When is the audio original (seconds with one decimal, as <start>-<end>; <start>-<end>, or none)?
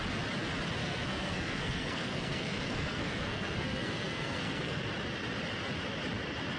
0.0-0.8; 4.8-6.6